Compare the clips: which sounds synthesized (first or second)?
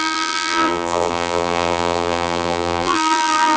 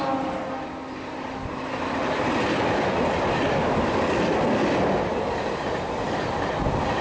first